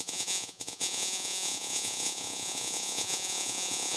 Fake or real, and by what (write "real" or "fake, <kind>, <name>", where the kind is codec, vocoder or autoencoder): fake, vocoder, Vocos